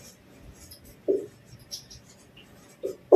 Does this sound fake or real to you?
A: real